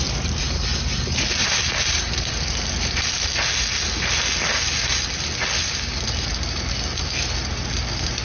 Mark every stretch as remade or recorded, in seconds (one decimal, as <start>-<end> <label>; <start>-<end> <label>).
0.0-1.4 recorded; 1.4-2.3 remade; 2.3-8.2 recorded